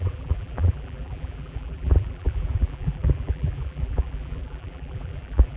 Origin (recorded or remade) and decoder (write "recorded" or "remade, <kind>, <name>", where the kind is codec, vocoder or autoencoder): remade, vocoder, BigVGAN v2